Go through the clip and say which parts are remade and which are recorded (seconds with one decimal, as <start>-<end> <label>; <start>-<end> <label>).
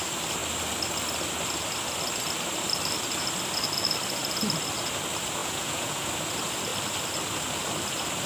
0.0-5.4 recorded; 5.4-6.1 remade; 6.1-8.3 recorded